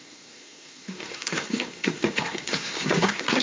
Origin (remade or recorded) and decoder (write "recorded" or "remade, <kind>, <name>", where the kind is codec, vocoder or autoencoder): remade, codec, SNAC